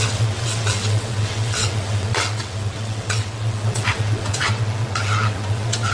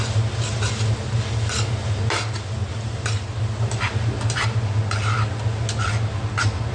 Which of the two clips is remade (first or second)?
first